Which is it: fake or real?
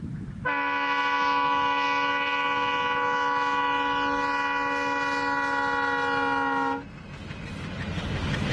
real